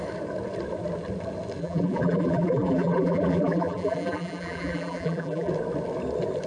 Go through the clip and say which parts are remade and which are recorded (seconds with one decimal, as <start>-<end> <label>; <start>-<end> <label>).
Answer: 0.0-1.6 recorded; 1.6-5.5 remade; 5.5-6.5 recorded